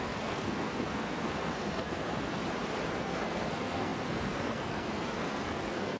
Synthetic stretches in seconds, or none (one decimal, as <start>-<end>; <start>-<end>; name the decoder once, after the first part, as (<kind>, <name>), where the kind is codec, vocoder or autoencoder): 0.0-2.4 (codec, SNAC); 3.0-6.0